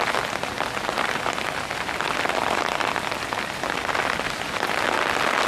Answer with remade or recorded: recorded